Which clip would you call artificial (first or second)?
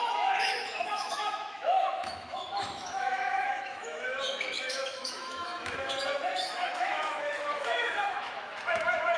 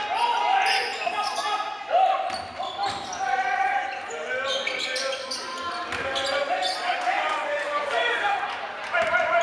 first